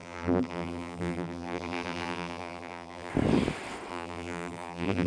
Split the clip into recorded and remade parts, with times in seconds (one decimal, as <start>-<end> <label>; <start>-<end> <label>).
0.0-3.1 remade; 3.1-3.9 recorded; 3.9-5.1 remade